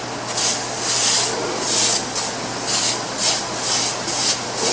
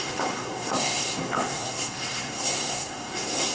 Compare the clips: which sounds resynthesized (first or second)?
second